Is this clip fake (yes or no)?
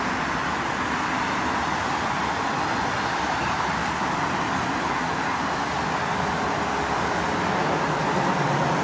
no